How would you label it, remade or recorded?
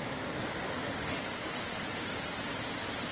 recorded